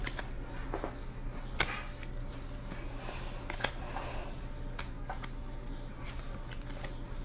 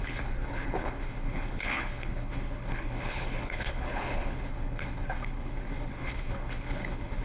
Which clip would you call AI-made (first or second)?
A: second